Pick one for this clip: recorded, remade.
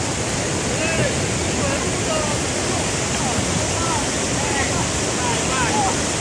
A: recorded